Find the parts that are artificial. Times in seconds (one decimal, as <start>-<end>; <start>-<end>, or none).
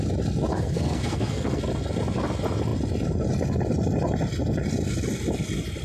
0.5-1.6